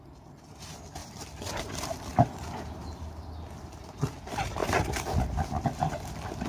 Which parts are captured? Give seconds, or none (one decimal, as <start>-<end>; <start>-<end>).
0.0-1.0; 2.9-4.6; 5.9-6.5